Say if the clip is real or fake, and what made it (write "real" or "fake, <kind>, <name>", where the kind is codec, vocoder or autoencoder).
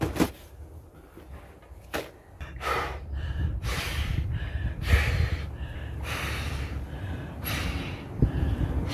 fake, vocoder, BigVGAN v2